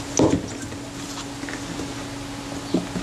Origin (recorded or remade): recorded